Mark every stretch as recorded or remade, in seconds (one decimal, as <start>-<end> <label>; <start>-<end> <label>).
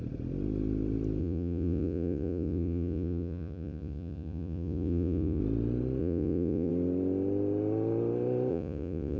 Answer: 0.0-1.2 recorded; 1.2-5.4 remade; 5.4-6.0 recorded; 6.0-6.7 remade; 6.7-8.5 recorded; 8.5-9.2 remade